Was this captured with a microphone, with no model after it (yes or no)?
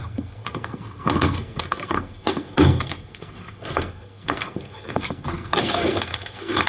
no